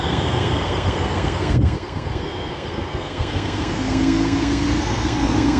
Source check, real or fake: fake